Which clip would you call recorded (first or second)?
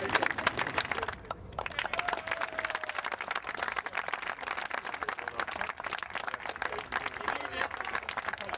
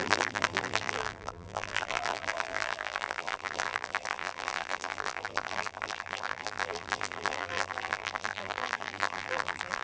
first